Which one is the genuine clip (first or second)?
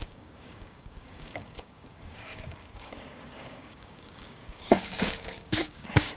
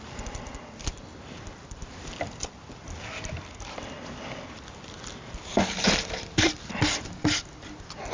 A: second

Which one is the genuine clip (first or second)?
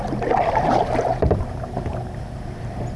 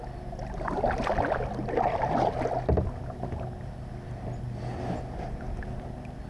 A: second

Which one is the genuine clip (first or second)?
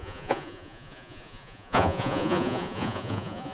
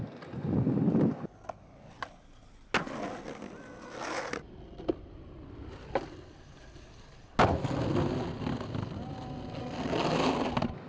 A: second